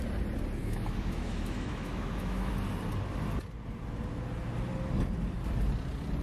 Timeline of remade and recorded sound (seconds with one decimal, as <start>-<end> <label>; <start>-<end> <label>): 0.0-0.6 recorded; 0.6-2.5 remade; 2.5-6.2 recorded